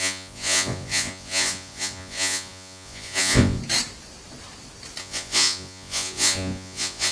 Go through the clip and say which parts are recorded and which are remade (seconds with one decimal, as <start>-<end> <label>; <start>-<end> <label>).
0.0-3.6 remade; 3.6-5.0 recorded; 5.0-7.1 remade